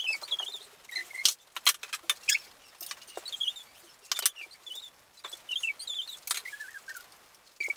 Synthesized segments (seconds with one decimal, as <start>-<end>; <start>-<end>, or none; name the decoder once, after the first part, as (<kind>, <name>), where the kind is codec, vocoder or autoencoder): none